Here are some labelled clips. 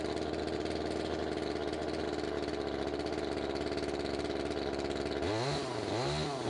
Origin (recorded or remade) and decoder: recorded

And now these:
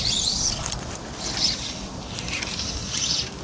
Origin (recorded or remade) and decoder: recorded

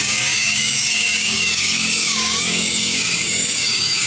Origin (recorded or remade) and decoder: remade, codec, DAC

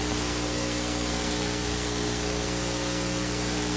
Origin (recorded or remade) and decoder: remade, codec, SNAC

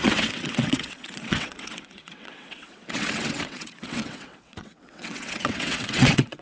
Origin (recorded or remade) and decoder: remade, vocoder, WaveNeXt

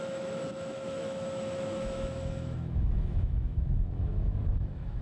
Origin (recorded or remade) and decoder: remade, autoencoder, DAC-VAE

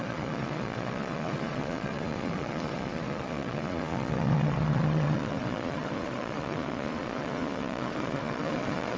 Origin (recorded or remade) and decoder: remade, vocoder, Vocos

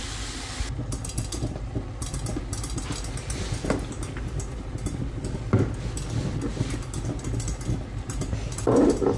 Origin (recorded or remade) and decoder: recorded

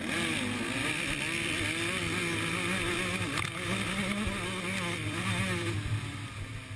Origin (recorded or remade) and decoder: recorded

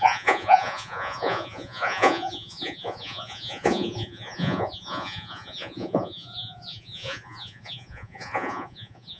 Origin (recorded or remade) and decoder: remade, vocoder, Vocos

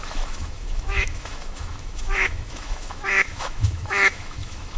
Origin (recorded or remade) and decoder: remade, autoencoder, DAC-VAE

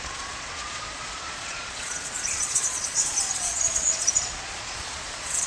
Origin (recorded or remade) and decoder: remade, vocoder, Vocos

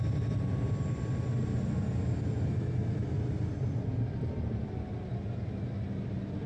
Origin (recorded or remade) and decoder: recorded